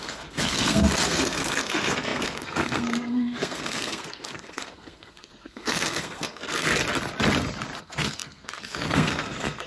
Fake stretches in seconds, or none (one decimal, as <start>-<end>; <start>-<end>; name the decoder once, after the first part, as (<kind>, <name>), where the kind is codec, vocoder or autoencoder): 0.0-6.7 (codec, SNAC); 7.8-9.7